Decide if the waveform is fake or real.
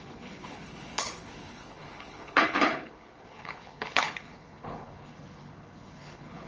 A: fake